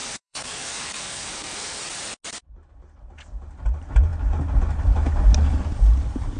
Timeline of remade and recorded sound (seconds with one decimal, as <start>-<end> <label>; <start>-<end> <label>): 0.0-1.8 remade; 1.8-6.4 recorded